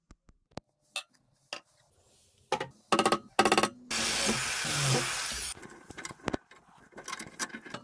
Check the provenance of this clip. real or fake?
real